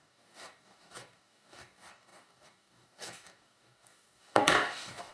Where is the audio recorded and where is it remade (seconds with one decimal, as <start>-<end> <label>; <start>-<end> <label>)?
0.0-5.1 remade